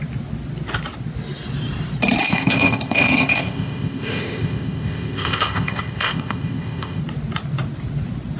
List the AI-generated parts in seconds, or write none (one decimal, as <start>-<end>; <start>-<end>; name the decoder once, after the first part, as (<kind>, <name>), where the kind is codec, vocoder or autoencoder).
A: 2.2-7.0 (codec, ZipCodec)